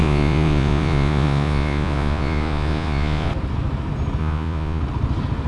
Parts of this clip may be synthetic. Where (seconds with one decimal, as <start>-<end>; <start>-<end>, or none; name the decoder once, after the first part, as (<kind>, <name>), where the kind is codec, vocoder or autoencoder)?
0.0-3.3 (vocoder, Vocos); 4.2-4.8